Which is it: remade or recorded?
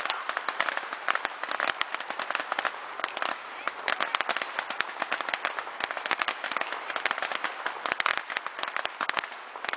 recorded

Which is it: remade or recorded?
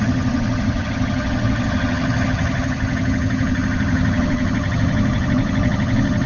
remade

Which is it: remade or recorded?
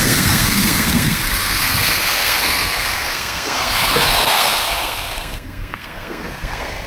remade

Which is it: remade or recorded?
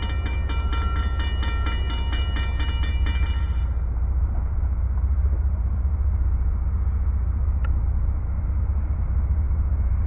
recorded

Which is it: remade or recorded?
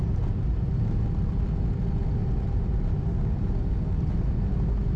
recorded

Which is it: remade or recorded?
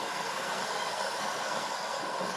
remade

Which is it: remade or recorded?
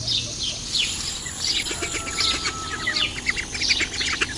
recorded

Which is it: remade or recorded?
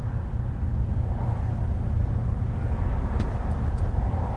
recorded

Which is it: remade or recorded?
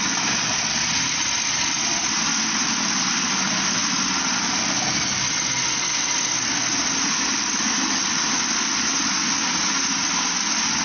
recorded